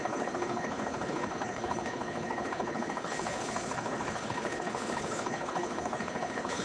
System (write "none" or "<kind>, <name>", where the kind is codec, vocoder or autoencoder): codec, HILCodec